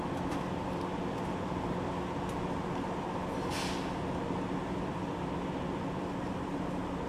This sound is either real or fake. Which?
real